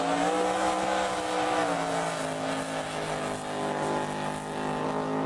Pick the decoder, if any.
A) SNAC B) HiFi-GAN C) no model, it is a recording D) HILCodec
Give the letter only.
C